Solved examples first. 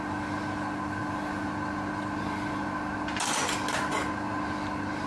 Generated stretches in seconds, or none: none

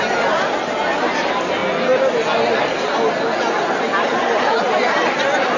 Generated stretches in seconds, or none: none

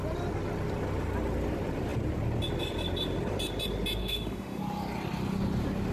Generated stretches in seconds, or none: 4.0-4.6 (autoencoder, DAC-VAE)

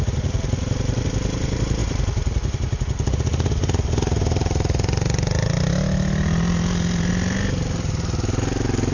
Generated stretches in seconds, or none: none